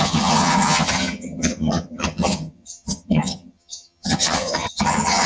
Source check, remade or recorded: remade